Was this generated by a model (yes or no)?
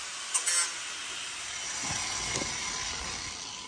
no